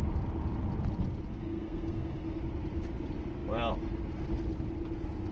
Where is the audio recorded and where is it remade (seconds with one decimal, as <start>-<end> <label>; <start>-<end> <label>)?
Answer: 0.0-1.3 recorded; 1.3-2.4 remade; 2.4-5.3 recorded